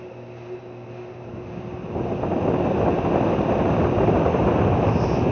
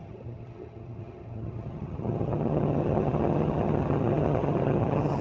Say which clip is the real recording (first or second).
first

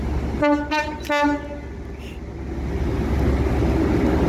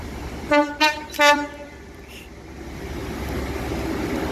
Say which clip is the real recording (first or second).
first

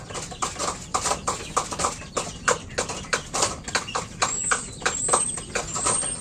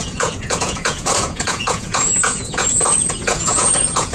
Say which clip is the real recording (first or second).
first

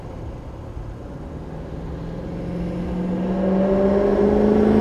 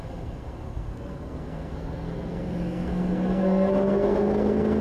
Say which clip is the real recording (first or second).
first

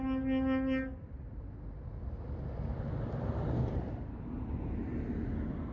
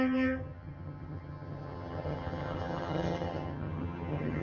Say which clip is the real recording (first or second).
first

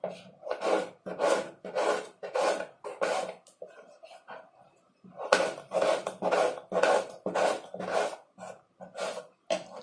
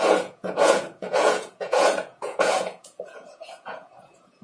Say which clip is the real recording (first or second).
first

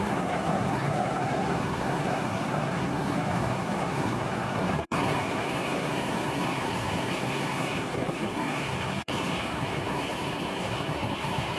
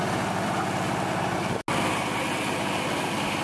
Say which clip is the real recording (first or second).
second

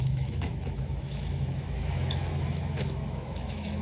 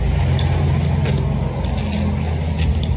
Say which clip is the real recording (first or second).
second